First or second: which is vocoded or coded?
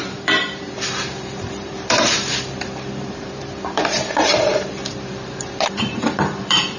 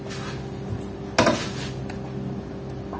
first